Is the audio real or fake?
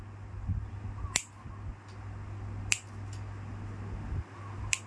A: real